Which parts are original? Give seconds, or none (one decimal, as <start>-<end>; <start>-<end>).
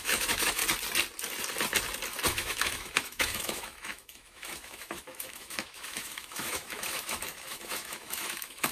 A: 0.6-2.3